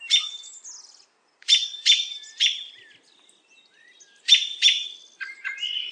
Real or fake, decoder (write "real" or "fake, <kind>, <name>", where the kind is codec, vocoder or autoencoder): real